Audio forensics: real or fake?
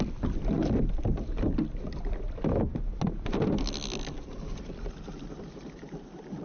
real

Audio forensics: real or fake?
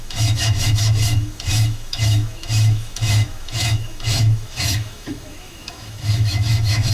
fake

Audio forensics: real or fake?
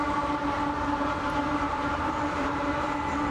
fake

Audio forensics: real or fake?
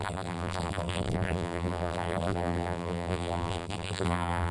fake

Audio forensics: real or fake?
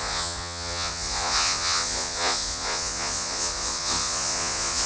fake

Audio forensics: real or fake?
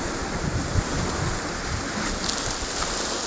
real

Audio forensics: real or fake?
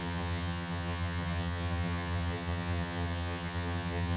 fake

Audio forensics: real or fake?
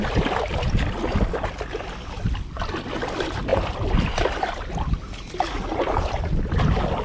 real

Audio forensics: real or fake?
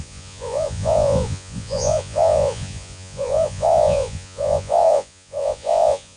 fake